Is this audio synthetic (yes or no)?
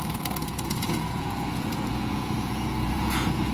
yes